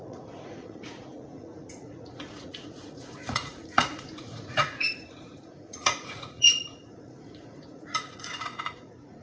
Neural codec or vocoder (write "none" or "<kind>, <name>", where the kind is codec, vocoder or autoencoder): vocoder, Vocos